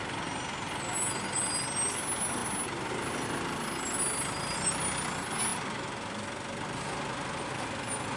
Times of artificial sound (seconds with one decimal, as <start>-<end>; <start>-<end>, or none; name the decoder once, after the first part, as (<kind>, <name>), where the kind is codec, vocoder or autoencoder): none